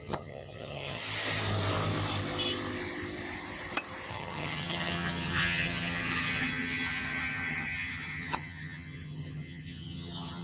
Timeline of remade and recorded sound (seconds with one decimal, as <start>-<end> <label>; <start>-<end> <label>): 0.0-1.0 remade; 1.0-4.1 recorded; 4.1-10.4 remade